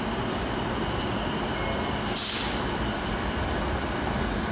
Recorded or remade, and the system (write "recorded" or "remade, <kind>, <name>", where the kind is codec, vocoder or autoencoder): recorded